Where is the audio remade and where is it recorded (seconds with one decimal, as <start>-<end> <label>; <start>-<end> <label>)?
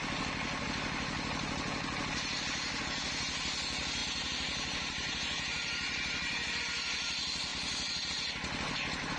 0.0-4.0 recorded; 4.0-6.6 remade; 6.6-7.5 recorded; 7.5-8.1 remade; 8.1-9.2 recorded